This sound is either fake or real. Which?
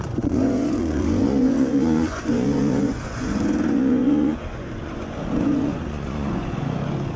fake